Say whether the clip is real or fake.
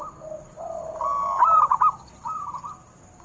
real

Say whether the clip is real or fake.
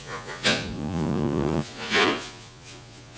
fake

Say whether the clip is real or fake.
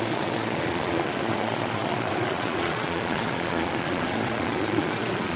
fake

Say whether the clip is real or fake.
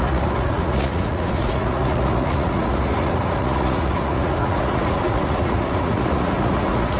fake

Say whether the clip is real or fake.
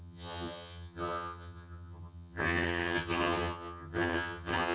fake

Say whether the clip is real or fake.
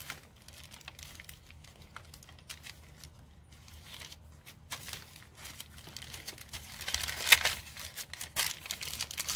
real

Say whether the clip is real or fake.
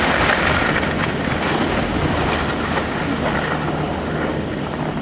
real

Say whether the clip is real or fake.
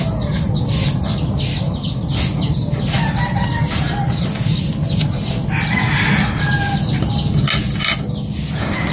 real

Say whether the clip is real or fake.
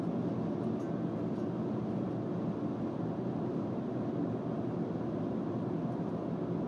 real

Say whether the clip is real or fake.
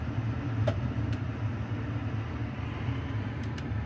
fake